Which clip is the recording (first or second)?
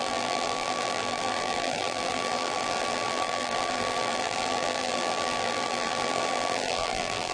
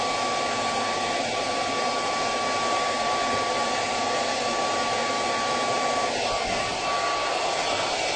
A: second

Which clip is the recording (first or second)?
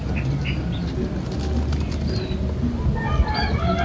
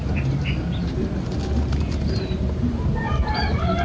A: first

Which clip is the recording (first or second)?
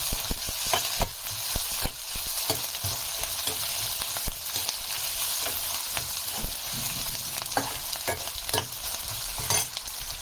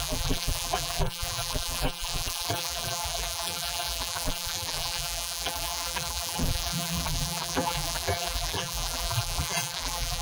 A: first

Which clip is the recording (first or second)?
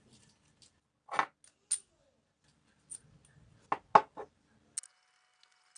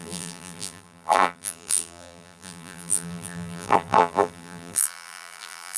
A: first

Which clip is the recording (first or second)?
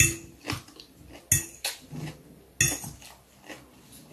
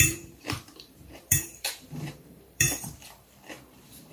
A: first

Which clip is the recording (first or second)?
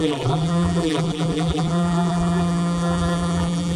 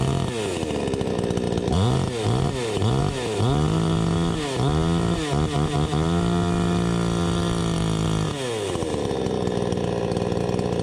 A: second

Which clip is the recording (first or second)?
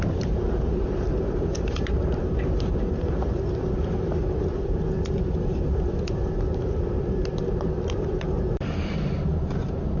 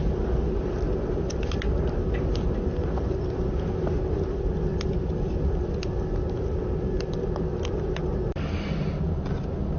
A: second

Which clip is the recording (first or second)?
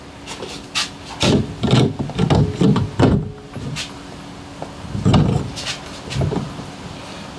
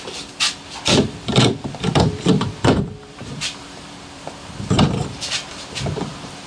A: first